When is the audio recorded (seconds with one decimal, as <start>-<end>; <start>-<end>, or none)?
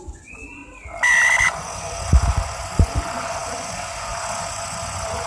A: 0.6-1.4